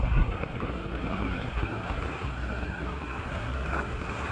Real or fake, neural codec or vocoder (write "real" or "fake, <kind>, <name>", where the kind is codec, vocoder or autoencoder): fake, codec, SNAC